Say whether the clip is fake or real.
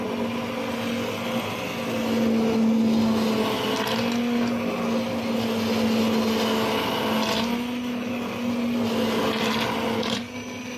real